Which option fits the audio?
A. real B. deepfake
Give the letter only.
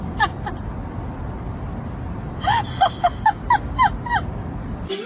A